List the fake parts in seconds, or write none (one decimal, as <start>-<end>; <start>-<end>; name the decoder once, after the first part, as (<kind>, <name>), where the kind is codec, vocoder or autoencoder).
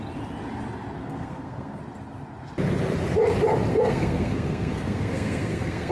1.0-1.8 (codec, SNAC); 3.7-5.9